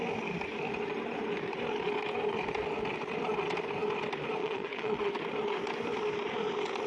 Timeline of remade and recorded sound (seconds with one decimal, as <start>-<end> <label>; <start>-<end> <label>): 0.0-4.4 recorded; 4.4-5.1 remade; 5.1-6.9 recorded